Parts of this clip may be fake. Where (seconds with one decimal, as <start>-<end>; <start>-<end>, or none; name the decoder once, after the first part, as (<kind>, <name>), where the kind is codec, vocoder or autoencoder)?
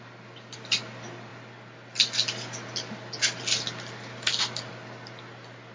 none